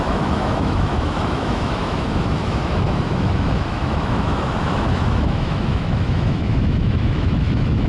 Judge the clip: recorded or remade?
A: remade